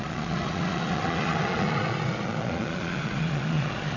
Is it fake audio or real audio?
fake